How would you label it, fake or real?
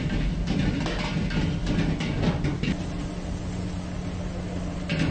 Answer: real